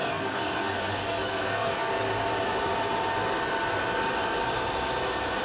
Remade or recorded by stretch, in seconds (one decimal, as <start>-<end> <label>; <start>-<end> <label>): 0.0-1.9 remade; 1.9-5.4 recorded

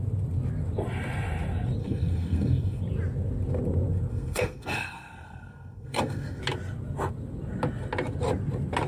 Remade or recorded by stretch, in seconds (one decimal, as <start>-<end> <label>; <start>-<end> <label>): 0.0-1.8 recorded; 1.8-2.8 remade; 2.8-4.1 recorded; 4.1-6.4 remade; 6.4-8.9 recorded

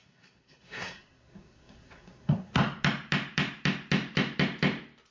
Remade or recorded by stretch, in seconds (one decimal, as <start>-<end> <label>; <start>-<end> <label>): 0.0-2.6 remade; 2.6-5.1 recorded

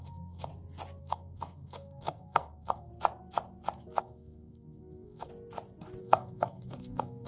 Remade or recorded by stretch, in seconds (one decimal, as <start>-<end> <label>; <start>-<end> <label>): 0.0-0.5 remade; 0.5-1.0 recorded; 1.0-2.9 remade; 2.9-4.0 recorded; 4.0-5.3 remade; 5.3-6.0 recorded; 6.0-7.3 remade